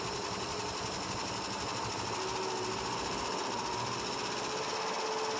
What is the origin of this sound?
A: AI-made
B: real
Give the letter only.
B